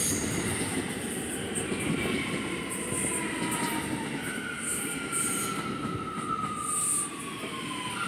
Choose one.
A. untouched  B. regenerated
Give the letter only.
A